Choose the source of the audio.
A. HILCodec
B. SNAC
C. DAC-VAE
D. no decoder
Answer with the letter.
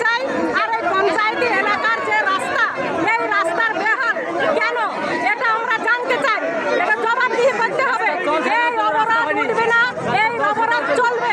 D